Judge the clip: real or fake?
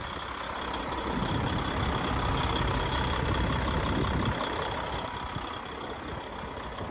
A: real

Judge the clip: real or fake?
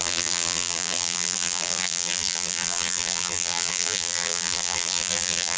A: fake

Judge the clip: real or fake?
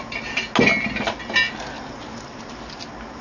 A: real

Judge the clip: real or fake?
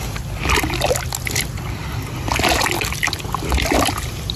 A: real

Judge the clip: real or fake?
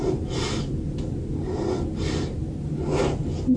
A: real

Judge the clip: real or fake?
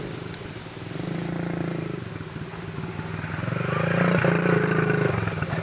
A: real